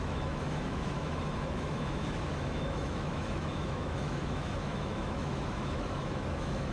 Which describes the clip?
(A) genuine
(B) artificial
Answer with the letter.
B